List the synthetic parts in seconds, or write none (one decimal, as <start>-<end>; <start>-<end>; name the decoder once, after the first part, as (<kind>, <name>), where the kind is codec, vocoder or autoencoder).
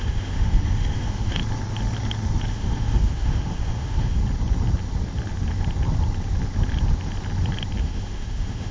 0.0-1.4 (autoencoder, DAC-VAE); 2.5-4.2; 7.8-8.7